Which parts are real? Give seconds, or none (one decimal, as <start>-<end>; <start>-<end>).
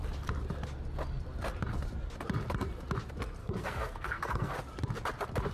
0.0-3.4; 4.5-5.5